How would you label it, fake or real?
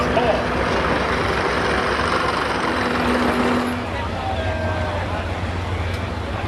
real